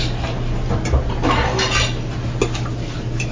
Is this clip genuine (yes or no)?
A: yes